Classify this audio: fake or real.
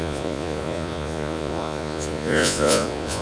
fake